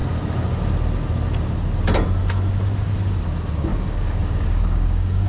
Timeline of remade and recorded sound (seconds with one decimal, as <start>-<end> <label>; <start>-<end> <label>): 0.0-3.7 recorded; 3.7-5.3 remade